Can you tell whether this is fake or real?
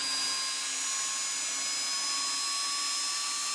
real